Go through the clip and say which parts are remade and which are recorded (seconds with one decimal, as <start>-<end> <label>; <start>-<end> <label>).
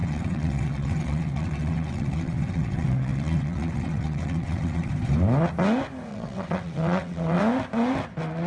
0.0-4.9 remade; 4.9-6.1 recorded; 6.1-7.4 remade; 7.4-8.5 recorded